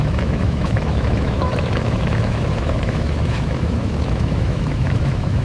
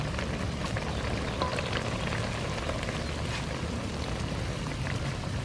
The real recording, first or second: second